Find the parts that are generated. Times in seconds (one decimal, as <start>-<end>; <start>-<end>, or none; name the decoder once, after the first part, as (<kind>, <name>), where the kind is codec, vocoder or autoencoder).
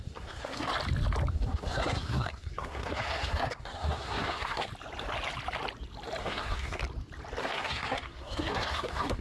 0.0-0.7 (codec, SNAC); 1.3-4.7; 6.2-6.8; 7.4-9.2